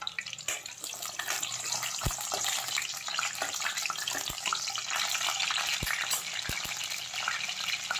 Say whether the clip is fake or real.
real